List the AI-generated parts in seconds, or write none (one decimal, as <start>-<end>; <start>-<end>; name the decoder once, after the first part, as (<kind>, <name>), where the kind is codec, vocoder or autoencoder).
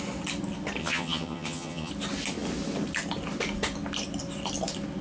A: 0.8-1.9 (vocoder, HiFi-GAN)